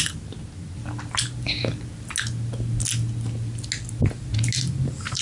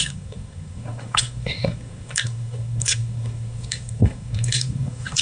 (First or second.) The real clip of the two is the first